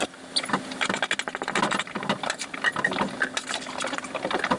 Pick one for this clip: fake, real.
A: real